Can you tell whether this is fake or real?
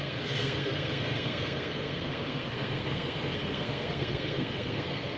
fake